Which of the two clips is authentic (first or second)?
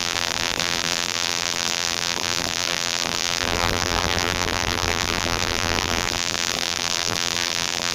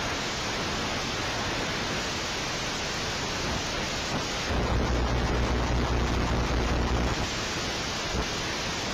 second